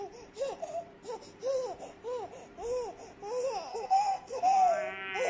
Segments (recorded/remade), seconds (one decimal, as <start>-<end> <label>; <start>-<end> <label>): 0.0-3.7 recorded; 3.7-4.4 remade; 4.4-5.3 recorded